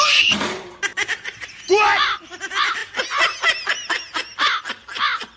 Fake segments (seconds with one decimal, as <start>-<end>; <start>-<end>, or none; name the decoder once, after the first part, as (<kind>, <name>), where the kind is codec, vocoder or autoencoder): 0.0-0.9 (vocoder, BigVGAN v2); 1.5-2.8